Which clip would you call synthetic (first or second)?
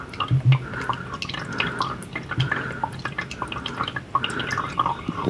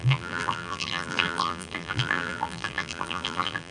second